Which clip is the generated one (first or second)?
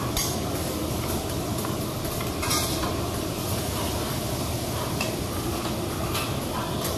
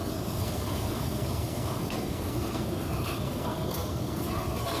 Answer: second